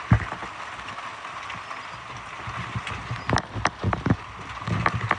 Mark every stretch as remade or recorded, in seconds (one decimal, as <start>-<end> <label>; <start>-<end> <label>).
0.0-5.2 recorded